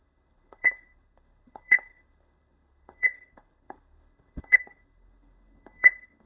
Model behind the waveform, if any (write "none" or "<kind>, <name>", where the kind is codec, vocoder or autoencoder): codec, HILCodec